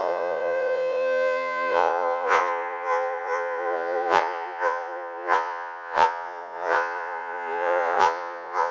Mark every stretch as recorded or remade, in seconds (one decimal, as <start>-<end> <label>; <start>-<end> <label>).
0.0-8.7 remade